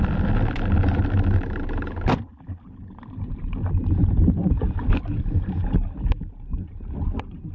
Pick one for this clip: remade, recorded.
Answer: recorded